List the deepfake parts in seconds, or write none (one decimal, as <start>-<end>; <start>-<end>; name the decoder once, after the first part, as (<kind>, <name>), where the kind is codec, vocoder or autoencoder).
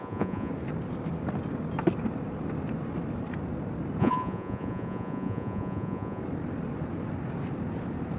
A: 0.0-0.5 (vocoder, Vocos); 4.0-6.2